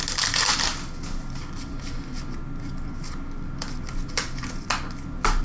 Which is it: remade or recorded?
recorded